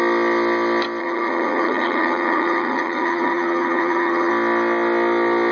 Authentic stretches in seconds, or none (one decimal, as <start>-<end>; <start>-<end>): 0.0-1.0; 4.3-5.5